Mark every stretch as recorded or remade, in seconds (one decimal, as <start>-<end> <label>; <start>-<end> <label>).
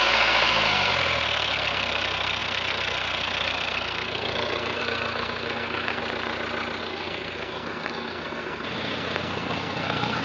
0.0-6.0 remade; 6.0-6.8 recorded; 6.8-10.2 remade